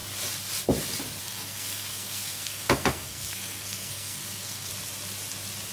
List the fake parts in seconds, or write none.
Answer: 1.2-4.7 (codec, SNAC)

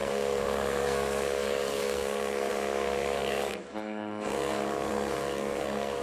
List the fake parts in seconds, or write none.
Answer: 0.0-6.0 (codec, SNAC)

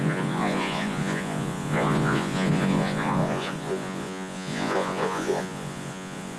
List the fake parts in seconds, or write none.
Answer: 0.0-6.4 (vocoder, Vocos)

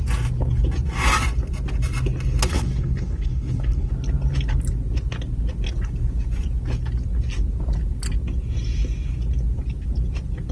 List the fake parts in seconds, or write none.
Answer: 2.5-3.9 (codec, HILCodec)

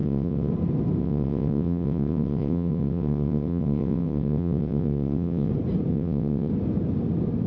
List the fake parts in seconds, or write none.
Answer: 0.0-0.5 (vocoder, WaveNeXt); 1.0-5.5; 5.9-6.5

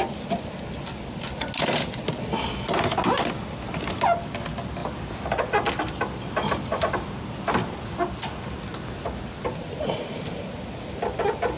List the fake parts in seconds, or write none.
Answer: none

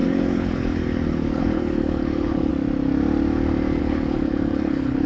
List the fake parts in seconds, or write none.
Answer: 0.0-2.5 (codec, HILCodec); 3.8-5.1